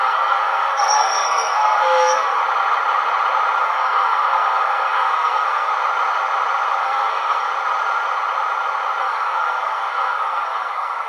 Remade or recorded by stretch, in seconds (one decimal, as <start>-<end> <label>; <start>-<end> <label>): 0.0-2.4 remade; 2.4-3.6 recorded; 3.6-5.7 remade; 5.7-6.8 recorded; 6.8-7.5 remade; 7.5-9.0 recorded; 9.0-11.1 remade

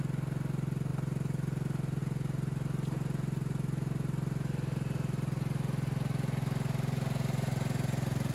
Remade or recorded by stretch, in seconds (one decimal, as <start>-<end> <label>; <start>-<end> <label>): 0.0-8.3 recorded

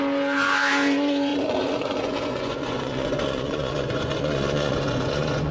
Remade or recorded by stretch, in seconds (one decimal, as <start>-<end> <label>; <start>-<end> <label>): 0.0-5.5 remade

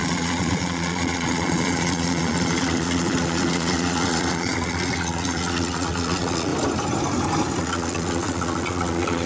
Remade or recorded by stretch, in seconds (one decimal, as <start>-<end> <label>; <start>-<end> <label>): 0.0-6.5 remade; 6.5-7.6 recorded; 7.6-9.3 remade

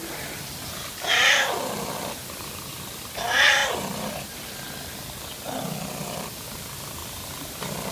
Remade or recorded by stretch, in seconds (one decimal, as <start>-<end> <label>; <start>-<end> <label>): 0.0-7.9 recorded